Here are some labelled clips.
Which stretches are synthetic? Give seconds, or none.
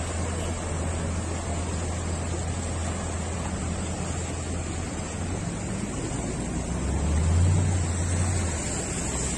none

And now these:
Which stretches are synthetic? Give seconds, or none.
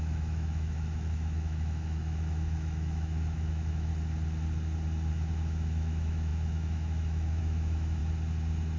0.0-3.9 (autoencoder, DAC-VAE); 5.1-8.0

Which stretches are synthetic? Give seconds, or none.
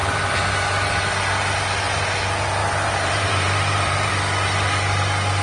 2.6-4.1 (vocoder, BigVGAN v2)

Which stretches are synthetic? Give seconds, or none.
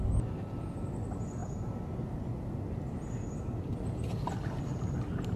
none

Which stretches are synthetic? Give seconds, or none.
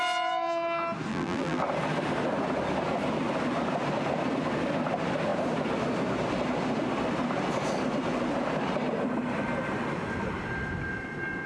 1.1-1.6 (vocoder, BigVGAN v2)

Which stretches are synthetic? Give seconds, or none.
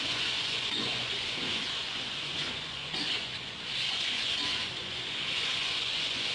0.0-6.3 (vocoder, Vocos)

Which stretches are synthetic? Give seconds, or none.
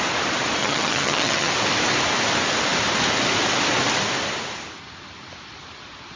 0.6-1.5 (vocoder, HiFi-GAN)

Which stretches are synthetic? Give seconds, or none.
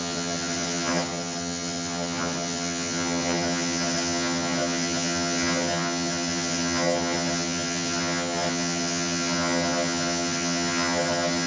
0.0-11.5 (vocoder, HiFi-GAN)